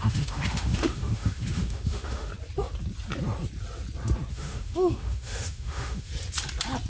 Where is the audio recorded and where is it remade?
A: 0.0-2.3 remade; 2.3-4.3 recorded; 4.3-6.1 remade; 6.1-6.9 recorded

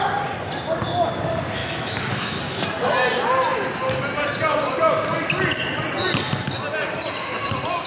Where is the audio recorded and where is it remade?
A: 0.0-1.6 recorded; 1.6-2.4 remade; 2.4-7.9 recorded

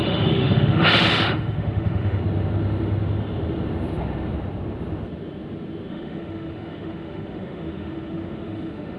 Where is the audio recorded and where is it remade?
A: 0.0-2.2 remade; 2.2-5.9 recorded; 5.9-9.0 remade

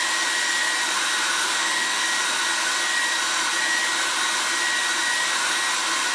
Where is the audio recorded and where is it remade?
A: 0.0-1.4 recorded; 1.4-2.0 remade; 2.0-6.1 recorded